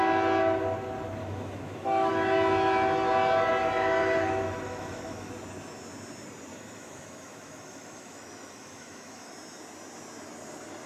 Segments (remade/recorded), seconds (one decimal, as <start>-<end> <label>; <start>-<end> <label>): 0.0-1.2 recorded; 1.2-2.1 remade; 2.1-4.0 recorded; 4.0-5.3 remade; 5.3-6.5 recorded; 6.5-9.3 remade; 9.3-10.9 recorded